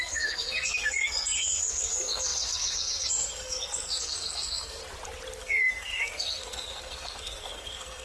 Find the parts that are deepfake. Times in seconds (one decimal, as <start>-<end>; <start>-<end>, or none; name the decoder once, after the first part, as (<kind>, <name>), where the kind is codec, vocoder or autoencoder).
0.0-4.8 (codec, SNAC); 5.4-8.0